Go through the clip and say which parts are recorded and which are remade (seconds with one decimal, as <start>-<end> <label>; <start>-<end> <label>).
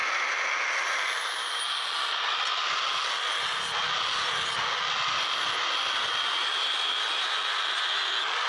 0.0-8.5 recorded